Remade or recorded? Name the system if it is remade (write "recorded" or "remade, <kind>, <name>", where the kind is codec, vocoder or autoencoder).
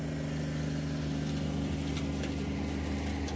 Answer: recorded